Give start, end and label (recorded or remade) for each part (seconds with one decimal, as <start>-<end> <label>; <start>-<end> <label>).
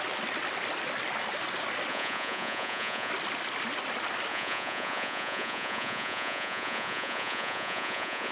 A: 0.0-1.9 recorded; 1.9-3.1 remade; 3.1-4.3 recorded; 4.3-8.3 remade